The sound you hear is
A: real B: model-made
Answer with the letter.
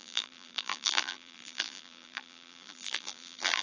B